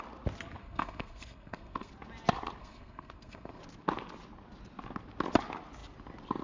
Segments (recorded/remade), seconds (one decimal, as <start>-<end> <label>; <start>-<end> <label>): 0.0-0.6 recorded; 0.6-1.9 remade; 1.9-2.6 recorded; 2.6-3.6 remade; 3.6-6.4 recorded